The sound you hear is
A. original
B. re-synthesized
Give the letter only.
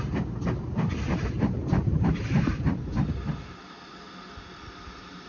A